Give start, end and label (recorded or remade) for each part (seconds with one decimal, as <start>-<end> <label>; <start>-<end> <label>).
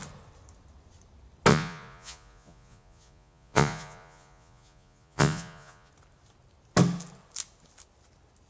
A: 0.0-1.5 recorded; 1.5-5.9 remade; 5.9-8.5 recorded